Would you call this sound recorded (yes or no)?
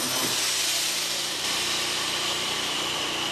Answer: no